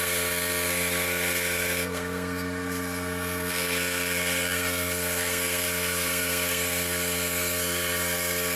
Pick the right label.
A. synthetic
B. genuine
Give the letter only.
A